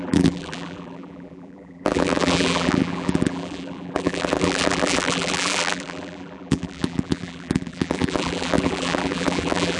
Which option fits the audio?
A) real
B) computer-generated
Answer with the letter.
B